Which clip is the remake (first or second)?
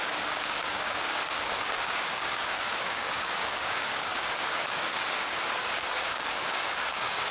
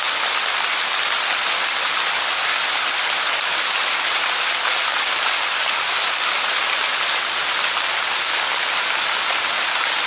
first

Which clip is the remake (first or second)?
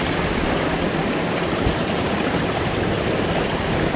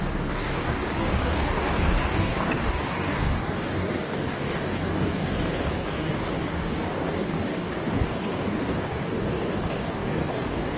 second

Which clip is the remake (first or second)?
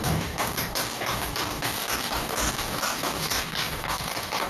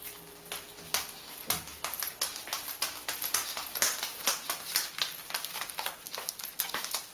first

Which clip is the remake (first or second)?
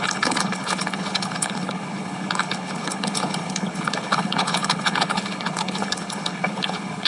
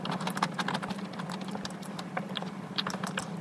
first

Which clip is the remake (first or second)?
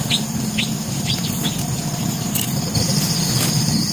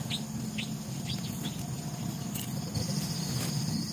first